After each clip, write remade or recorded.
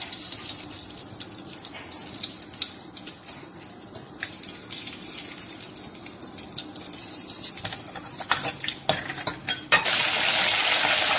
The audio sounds recorded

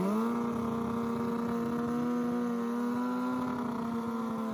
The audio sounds recorded